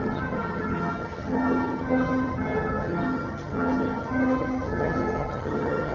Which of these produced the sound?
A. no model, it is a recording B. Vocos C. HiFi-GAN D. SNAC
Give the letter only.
C